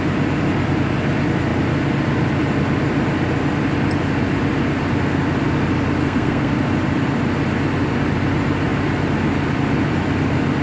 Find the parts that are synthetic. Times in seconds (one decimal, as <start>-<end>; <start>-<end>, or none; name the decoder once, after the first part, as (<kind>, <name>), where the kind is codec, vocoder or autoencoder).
6.0-6.5 (codec, SNAC)